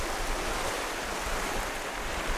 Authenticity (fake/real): real